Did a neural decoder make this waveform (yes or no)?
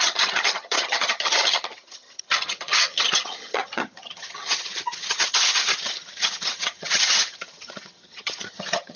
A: yes